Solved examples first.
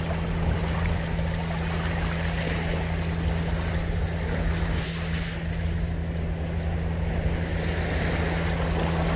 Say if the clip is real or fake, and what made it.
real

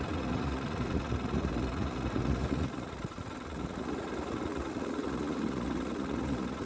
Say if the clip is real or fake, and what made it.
fake, vocoder, Vocos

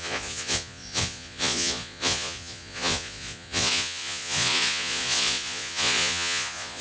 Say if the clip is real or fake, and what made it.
fake, vocoder, Vocos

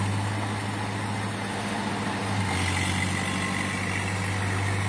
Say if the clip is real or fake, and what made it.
real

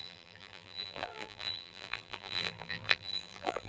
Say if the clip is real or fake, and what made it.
fake, vocoder, BigVGAN v2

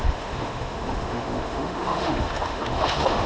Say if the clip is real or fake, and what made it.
fake, autoencoder, DAC-VAE